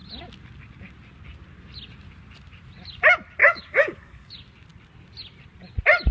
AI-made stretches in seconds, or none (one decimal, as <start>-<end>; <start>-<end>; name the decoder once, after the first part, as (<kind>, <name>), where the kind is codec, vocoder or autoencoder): 3.4-4.3 (codec, DAC)